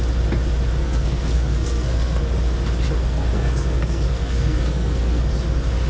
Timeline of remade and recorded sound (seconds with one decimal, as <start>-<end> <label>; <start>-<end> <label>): 0.0-0.8 recorded; 0.8-2.2 remade; 2.2-3.0 recorded; 3.0-5.2 remade; 5.2-5.9 recorded